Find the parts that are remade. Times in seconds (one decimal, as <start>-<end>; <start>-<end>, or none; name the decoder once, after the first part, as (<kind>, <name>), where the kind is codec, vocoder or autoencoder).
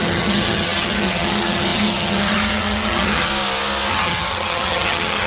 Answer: 0.0-3.3 (vocoder, HiFi-GAN); 3.9-5.3